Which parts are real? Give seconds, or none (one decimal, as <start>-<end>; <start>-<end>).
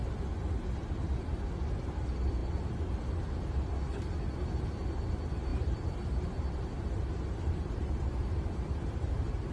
0.0-5.5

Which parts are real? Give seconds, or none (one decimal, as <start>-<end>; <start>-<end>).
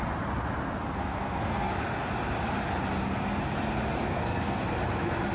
0.0-1.0; 1.7-4.1; 4.6-5.3